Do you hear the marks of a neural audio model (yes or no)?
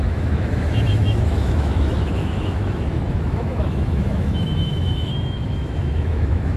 yes